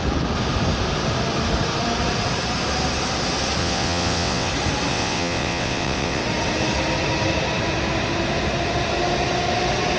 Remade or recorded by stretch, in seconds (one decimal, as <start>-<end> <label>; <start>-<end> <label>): 0.0-3.6 recorded; 3.6-4.5 remade; 4.5-4.9 recorded; 4.9-6.2 remade; 6.2-10.0 recorded